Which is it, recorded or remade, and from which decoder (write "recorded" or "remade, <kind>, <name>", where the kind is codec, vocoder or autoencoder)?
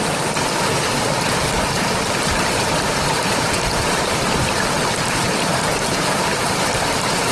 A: remade, vocoder, BigVGAN v2